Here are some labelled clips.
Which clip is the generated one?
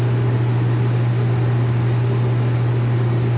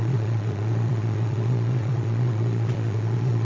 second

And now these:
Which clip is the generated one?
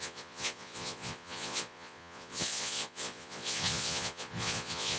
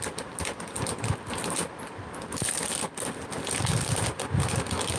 first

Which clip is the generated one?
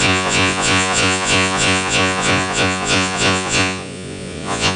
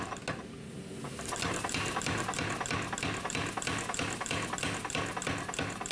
first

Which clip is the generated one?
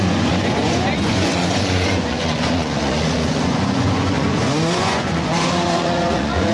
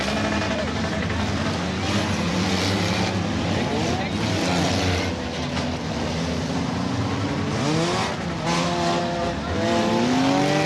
first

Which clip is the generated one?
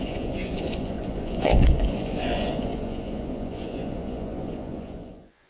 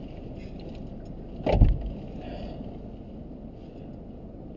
first